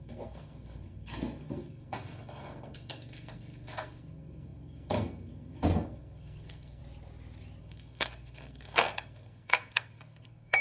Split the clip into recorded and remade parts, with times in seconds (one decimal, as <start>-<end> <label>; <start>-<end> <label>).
0.0-6.8 remade; 6.8-7.6 recorded; 7.6-10.6 remade